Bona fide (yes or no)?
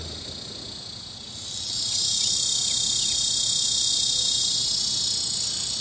yes